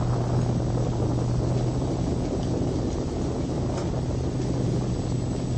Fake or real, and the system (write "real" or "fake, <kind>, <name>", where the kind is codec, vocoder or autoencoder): real